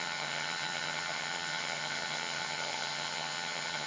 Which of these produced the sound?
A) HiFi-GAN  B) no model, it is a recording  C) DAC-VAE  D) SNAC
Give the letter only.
A